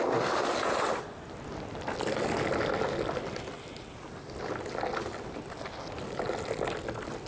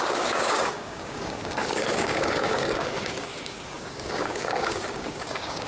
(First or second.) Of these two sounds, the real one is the first